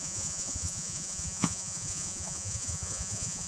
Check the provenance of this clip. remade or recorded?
remade